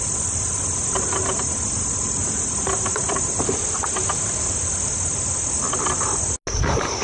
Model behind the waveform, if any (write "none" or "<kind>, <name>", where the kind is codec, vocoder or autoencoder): none